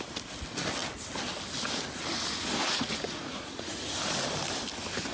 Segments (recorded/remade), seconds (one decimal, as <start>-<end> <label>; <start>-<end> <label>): 0.0-2.6 recorded; 2.6-3.9 remade; 3.9-5.1 recorded